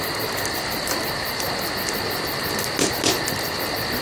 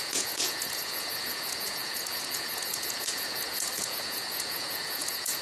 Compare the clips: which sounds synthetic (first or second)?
second